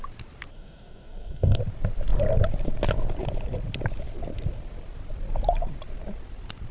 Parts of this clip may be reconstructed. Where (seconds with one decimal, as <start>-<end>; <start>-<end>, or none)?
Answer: 0.5-1.6